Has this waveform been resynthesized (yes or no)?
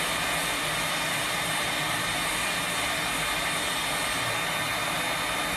no